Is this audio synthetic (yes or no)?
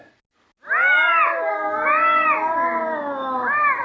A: no